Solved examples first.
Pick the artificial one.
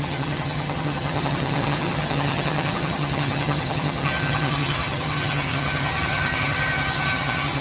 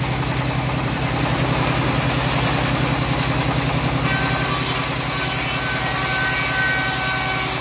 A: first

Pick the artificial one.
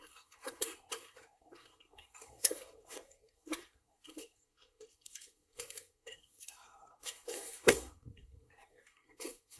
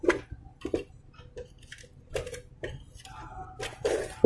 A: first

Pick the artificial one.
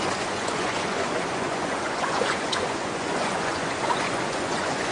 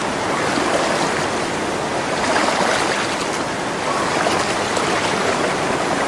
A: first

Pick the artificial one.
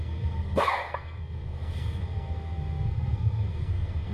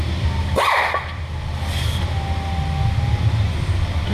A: first